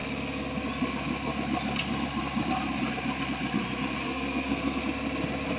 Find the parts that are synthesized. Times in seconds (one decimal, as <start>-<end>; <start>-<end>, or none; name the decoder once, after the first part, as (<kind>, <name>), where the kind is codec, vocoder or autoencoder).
4.0-4.8 (codec, SNAC)